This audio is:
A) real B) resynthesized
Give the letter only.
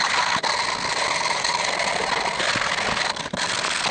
A